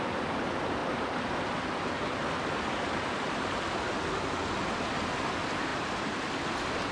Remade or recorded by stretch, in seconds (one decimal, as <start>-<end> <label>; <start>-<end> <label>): 0.0-0.8 recorded; 0.8-1.9 remade; 1.9-5.7 recorded; 5.7-6.4 remade; 6.4-6.9 recorded